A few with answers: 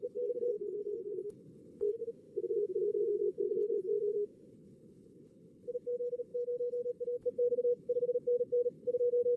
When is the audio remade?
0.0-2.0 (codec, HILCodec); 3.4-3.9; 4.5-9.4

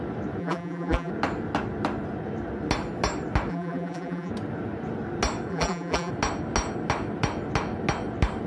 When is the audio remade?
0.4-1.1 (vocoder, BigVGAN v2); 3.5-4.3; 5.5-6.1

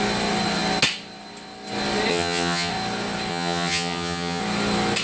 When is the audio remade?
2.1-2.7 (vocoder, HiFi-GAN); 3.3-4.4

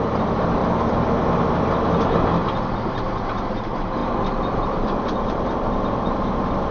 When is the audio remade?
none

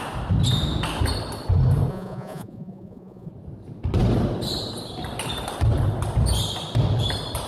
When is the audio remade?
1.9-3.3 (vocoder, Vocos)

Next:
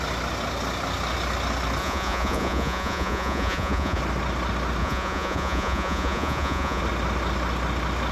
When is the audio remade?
1.8-4.0 (vocoder, Vocos); 4.8-6.8

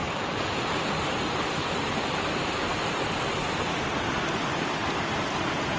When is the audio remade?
2.7-3.2 (vocoder, BigVGAN v2)